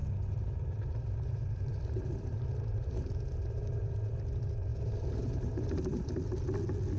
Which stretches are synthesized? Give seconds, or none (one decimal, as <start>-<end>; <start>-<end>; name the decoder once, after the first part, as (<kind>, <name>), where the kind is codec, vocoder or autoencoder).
0.0-4.2 (vocoder, BigVGAN v2); 4.7-6.1